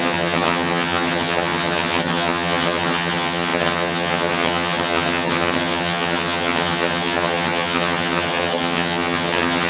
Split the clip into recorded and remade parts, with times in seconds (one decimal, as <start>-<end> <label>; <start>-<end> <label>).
0.0-9.7 remade

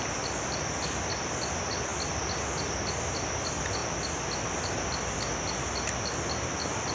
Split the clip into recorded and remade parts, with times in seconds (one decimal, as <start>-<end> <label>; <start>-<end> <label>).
0.0-6.9 recorded

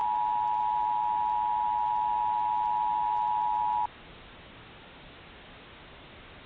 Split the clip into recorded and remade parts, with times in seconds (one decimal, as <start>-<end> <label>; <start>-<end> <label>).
0.0-6.5 recorded